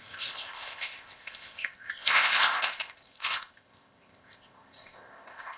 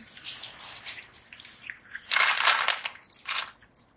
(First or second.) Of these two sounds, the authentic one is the second